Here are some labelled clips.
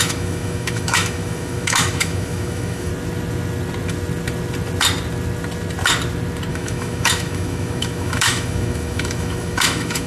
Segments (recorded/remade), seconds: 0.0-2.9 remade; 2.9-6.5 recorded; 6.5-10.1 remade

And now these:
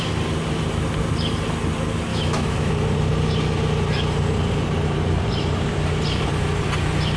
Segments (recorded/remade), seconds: 0.0-2.1 recorded; 2.1-2.7 remade; 2.7-7.2 recorded

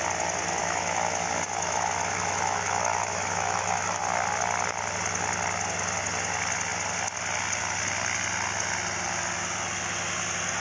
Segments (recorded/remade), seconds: 0.0-0.6 recorded; 0.6-4.0 remade; 4.0-10.6 recorded

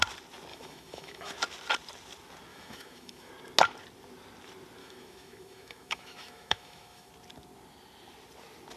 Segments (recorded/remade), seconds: 0.0-0.5 recorded; 0.5-1.3 remade; 1.3-2.5 recorded; 2.5-3.3 remade; 3.3-4.8 recorded; 4.8-7.1 remade; 7.1-8.8 recorded

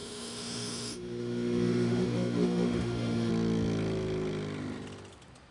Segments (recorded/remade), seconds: 0.0-3.3 remade; 3.3-5.5 recorded